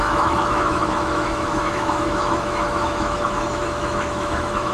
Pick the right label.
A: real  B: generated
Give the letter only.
B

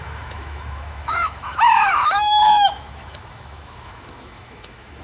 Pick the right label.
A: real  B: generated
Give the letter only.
B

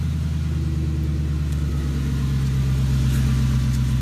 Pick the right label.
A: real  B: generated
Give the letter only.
A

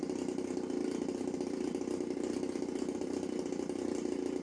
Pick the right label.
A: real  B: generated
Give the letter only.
A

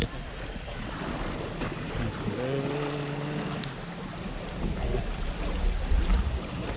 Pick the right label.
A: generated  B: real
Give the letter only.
B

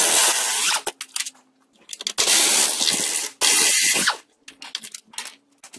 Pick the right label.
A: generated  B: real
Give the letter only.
B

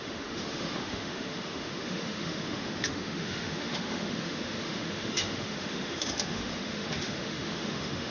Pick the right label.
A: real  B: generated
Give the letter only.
B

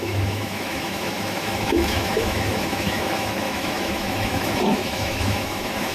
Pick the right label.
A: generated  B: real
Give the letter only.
A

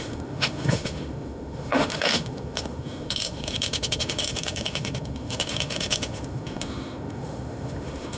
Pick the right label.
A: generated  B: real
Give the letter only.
A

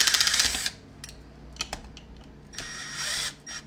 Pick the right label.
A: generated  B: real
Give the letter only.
B